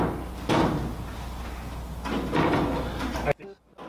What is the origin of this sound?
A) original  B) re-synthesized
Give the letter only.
A